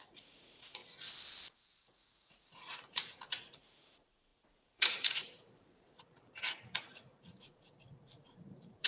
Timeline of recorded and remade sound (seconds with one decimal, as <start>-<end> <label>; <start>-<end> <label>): 0.0-0.8 remade; 0.8-1.8 recorded; 1.8-8.9 remade